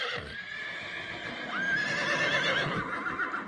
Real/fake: real